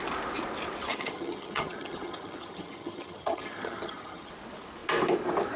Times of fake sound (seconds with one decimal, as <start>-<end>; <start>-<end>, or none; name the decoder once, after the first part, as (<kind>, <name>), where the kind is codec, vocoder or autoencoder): 0.9-4.3 (vocoder, HiFi-GAN)